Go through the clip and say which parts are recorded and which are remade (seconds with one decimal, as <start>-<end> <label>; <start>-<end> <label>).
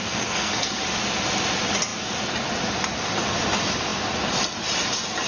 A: 0.0-0.8 remade; 0.8-5.3 recorded